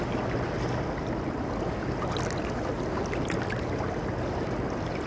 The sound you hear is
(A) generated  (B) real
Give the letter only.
B